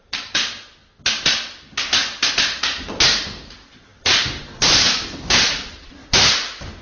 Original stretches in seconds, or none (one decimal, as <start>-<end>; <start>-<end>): 0.0-3.9; 5.9-6.8